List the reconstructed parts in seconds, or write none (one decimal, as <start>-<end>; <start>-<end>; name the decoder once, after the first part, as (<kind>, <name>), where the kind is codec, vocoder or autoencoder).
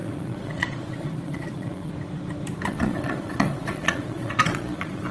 0.0-1.9 (vocoder, Vocos); 2.7-5.1